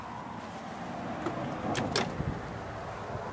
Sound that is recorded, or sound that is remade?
recorded